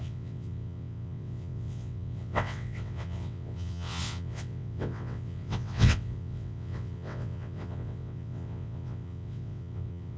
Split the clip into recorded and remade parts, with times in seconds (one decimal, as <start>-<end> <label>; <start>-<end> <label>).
0.0-10.2 remade